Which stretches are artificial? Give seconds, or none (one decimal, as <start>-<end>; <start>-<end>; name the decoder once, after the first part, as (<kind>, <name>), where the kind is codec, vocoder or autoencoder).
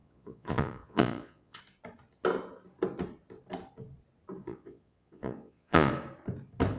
0.0-1.6 (vocoder, Vocos); 4.4-5.9